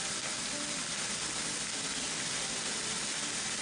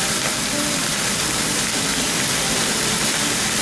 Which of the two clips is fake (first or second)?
second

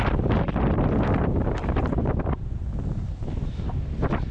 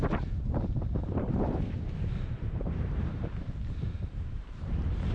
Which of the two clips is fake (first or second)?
second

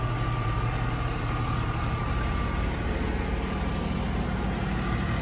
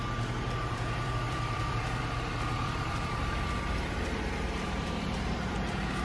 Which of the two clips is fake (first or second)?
second